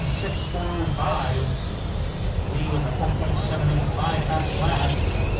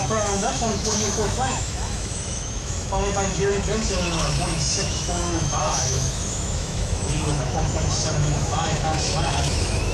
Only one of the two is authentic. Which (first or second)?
first